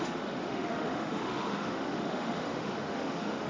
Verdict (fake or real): fake